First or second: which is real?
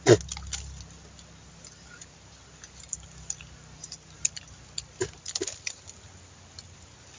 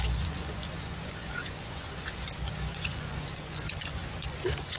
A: first